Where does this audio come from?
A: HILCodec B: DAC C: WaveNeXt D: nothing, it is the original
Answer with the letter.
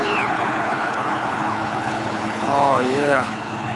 A